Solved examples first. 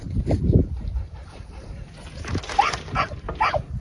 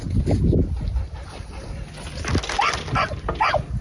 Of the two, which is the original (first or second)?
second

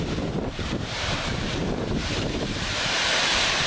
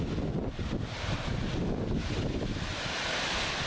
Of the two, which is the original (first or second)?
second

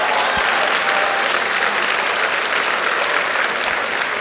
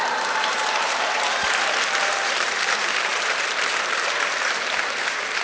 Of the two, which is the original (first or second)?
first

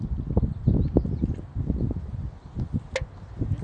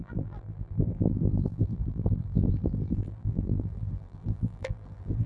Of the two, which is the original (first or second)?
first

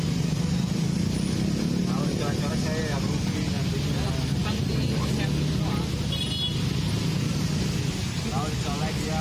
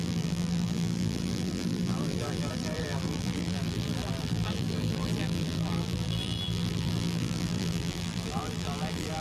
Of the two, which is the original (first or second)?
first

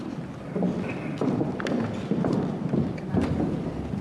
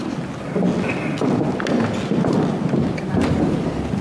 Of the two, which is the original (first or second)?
second